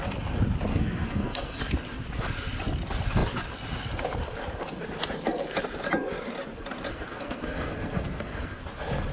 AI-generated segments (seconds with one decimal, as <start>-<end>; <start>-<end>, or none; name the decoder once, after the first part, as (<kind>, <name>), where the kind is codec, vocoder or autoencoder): 0.7-1.6 (codec, SNAC); 6.9-8.6